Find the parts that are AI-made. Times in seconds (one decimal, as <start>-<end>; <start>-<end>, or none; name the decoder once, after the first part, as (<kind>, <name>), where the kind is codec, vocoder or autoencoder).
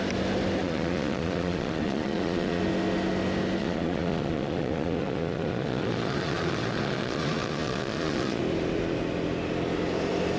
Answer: 0.6-2.6 (vocoder, Vocos); 3.6-8.4